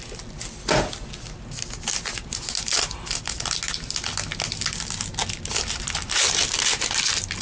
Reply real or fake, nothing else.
real